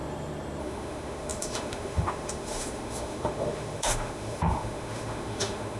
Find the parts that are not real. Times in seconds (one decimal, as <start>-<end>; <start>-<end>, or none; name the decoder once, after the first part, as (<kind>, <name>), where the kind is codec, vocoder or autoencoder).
0.6-5.8 (autoencoder, DAC-VAE)